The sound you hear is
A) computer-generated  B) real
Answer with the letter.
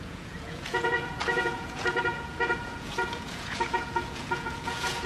A